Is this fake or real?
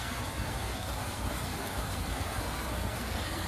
fake